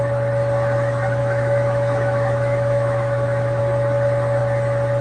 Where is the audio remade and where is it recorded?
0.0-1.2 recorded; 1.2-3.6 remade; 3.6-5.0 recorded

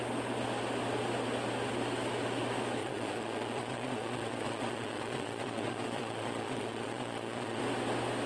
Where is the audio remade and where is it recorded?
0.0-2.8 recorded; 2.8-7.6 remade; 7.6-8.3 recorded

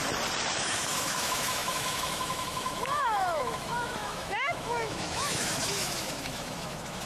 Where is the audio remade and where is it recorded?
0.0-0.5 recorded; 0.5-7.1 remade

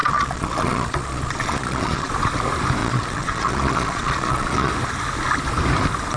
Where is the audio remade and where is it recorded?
0.0-2.1 remade; 2.1-2.8 recorded; 2.8-4.7 remade; 4.7-6.2 recorded

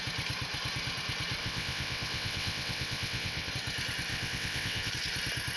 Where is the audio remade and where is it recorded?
0.0-1.4 recorded; 1.4-3.5 remade; 3.5-4.1 recorded; 4.1-4.9 remade; 4.9-5.6 recorded